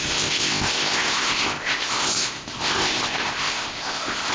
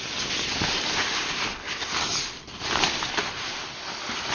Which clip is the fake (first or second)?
first